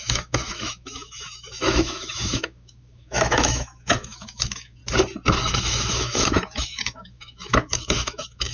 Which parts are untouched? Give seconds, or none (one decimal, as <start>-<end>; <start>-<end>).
4.8-5.4